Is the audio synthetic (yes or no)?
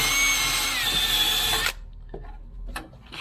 no